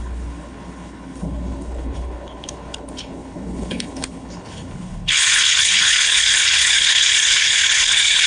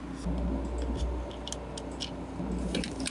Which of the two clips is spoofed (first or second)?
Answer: first